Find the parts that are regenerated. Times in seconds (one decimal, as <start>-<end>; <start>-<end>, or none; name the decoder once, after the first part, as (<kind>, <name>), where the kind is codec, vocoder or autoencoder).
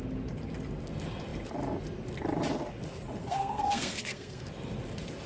3.2-4.4 (codec, SNAC)